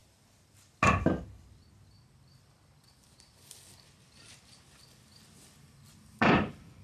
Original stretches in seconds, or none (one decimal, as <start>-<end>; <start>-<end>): 0.0-6.8